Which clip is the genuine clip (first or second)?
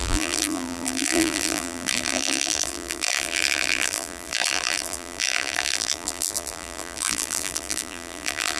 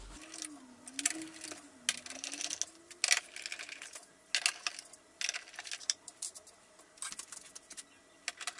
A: second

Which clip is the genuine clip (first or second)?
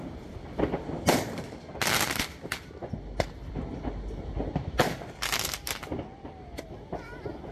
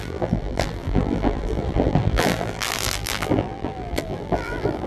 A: first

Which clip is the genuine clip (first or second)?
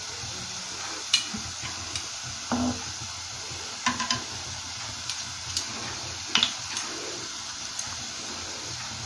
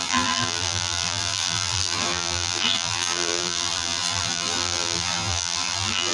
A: first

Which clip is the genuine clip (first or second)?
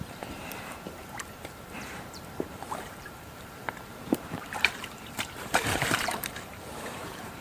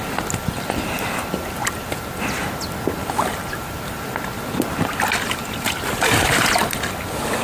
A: second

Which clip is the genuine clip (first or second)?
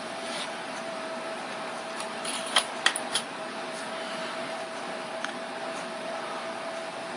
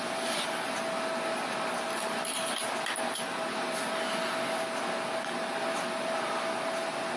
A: second